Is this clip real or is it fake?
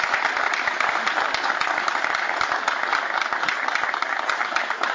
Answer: real